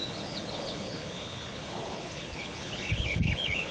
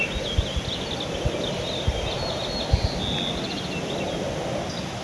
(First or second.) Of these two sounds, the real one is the second